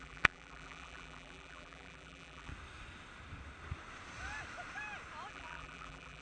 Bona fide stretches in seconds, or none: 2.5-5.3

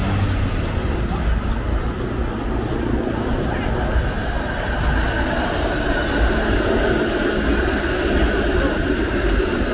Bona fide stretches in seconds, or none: 0.0-9.7